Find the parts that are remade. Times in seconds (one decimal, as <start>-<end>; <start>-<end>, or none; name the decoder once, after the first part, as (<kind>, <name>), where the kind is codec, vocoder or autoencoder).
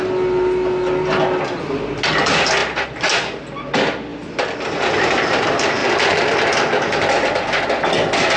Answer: none